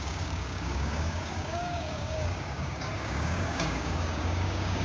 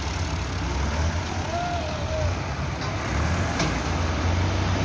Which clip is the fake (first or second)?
first